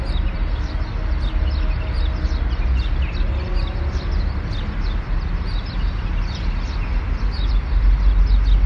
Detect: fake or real real